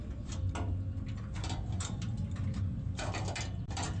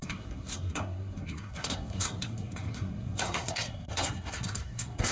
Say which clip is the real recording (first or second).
first